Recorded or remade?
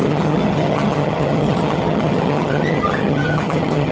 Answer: remade